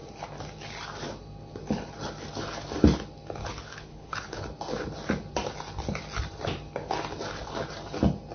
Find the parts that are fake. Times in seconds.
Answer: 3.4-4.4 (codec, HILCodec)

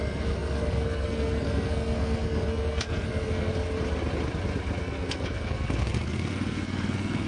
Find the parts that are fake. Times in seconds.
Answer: 0.0-3.5 (codec, SNAC); 4.8-7.3

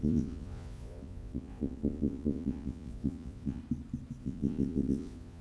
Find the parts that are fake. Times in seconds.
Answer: 0.0-3.6 (vocoder, Vocos); 4.2-5.4

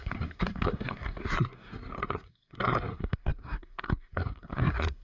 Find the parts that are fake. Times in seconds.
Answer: 0.0-5.0 (codec, SNAC)

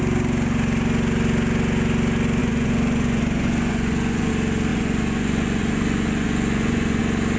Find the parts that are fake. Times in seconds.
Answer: 2.4-4.3 (vocoder, Vocos); 4.7-7.0

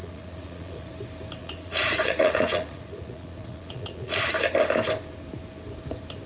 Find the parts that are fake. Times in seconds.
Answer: 0.0-0.9 (vocoder, Vocos); 1.4-4.3